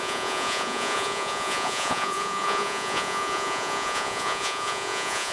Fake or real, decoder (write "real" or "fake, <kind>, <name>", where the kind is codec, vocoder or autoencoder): fake, vocoder, Vocos